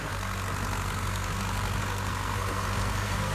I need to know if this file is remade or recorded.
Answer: remade